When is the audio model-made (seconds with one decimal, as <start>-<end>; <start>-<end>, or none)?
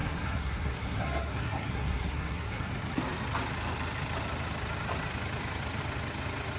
0.0-2.7